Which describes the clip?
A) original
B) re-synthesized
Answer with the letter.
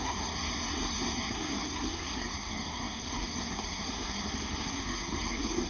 B